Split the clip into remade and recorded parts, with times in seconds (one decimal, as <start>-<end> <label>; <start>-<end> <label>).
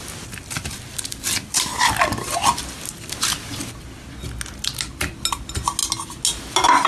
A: 0.0-6.9 recorded